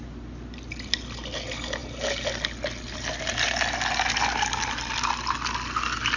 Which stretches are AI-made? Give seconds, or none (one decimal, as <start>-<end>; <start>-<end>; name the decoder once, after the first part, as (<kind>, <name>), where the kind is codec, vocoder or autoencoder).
none